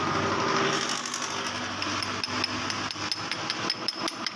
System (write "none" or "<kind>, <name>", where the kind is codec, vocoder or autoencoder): none